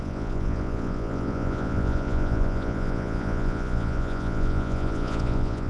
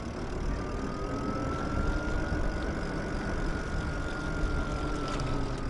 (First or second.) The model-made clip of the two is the first